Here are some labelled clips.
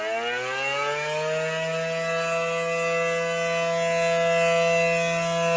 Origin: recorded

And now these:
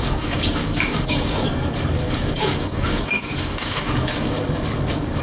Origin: remade